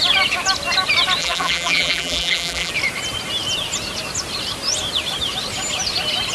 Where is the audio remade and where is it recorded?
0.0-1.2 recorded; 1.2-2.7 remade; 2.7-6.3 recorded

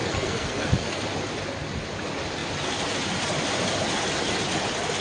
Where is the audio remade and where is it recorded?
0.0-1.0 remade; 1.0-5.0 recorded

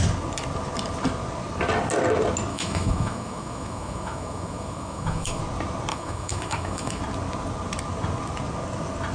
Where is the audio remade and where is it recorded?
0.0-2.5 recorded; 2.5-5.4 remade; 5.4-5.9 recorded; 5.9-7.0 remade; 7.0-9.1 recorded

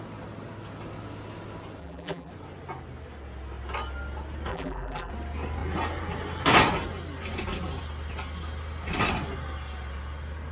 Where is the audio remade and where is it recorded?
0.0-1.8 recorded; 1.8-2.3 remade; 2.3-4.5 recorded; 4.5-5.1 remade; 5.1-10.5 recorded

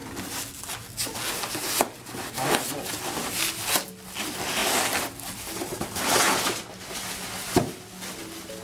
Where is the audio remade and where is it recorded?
0.0-5.7 recorded; 5.7-6.2 remade; 6.2-8.6 recorded

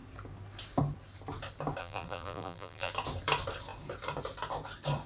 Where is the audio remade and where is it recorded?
0.0-1.8 recorded; 1.8-2.9 remade; 2.9-5.1 recorded

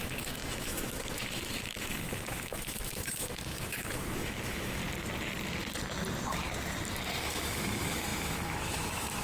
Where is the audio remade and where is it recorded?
0.0-4.8 remade; 4.8-7.2 recorded; 7.2-9.2 remade

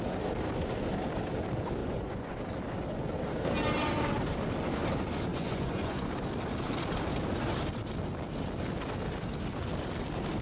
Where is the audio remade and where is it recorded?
0.0-1.8 recorded; 1.8-2.4 remade; 2.4-5.3 recorded; 5.3-6.1 remade; 6.1-10.4 recorded